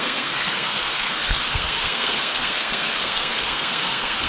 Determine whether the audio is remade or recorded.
remade